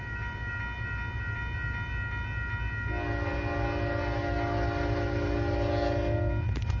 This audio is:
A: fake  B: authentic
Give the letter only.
B